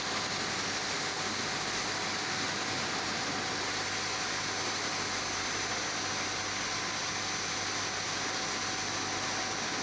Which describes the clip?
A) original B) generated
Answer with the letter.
A